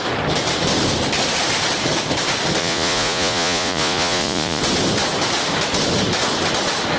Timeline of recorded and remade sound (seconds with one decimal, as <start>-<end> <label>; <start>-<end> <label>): 0.0-2.6 recorded; 2.6-4.6 remade; 4.6-7.0 recorded